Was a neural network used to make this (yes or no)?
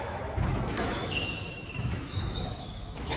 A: yes